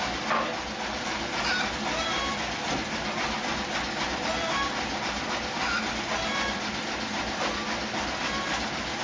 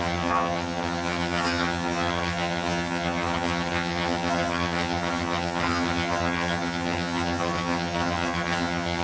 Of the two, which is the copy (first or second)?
second